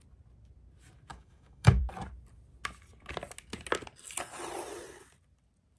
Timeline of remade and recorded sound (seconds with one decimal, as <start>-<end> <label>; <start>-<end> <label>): 0.0-1.1 recorded; 1.1-1.8 remade; 1.8-5.8 recorded